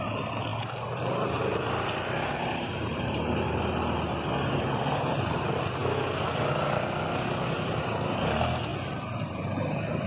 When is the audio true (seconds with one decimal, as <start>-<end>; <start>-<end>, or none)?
0.0-10.1